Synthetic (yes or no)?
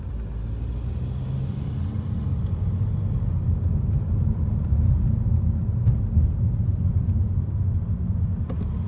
no